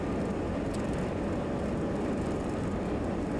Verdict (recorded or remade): recorded